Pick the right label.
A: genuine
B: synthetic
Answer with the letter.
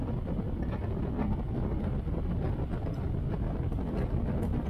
A